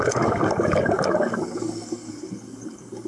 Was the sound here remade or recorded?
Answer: remade